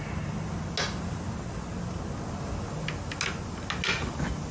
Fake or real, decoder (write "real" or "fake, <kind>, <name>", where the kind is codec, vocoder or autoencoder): real